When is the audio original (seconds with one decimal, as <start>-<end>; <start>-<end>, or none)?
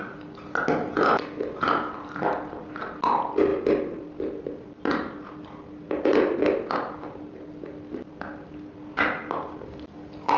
0.0-10.4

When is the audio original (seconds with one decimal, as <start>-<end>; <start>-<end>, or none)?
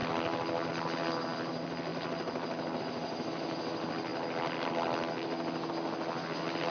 0.0-6.7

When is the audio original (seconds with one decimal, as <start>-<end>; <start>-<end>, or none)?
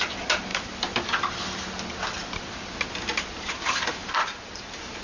0.0-4.0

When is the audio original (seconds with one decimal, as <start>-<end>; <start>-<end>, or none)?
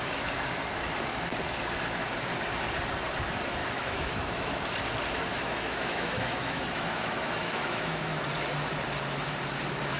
0.0-3.6; 4.6-5.3; 8.2-10.0